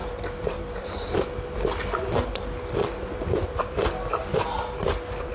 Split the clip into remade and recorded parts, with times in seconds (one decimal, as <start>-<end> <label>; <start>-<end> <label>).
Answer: 0.0-1.2 remade; 1.2-3.0 recorded; 3.0-3.8 remade; 3.8-5.3 recorded